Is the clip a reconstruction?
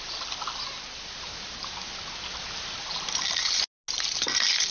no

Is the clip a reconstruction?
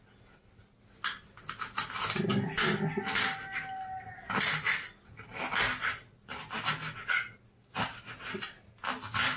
no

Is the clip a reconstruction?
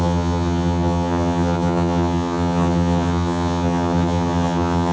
yes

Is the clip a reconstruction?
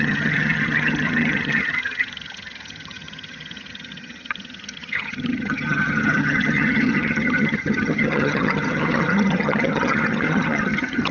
yes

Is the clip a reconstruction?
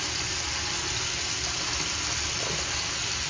no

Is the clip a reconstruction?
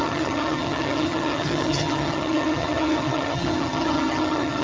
yes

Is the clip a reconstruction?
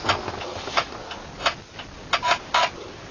no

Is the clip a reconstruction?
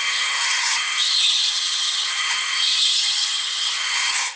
yes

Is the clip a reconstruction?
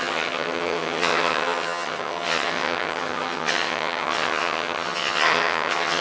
yes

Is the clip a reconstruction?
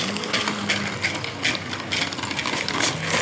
no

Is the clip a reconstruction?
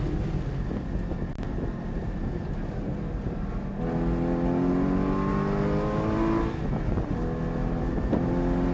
no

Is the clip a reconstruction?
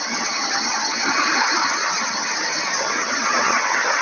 yes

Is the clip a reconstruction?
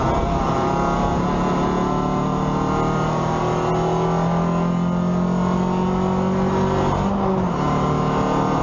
no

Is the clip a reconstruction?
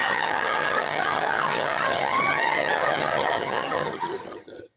yes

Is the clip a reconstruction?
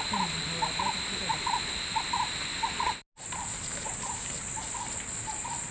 no